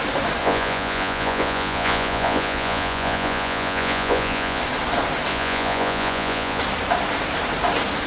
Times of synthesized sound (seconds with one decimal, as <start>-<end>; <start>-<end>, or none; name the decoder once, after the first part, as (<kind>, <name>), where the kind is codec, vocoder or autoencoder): 0.4-4.6 (vocoder, Vocos); 5.3-6.6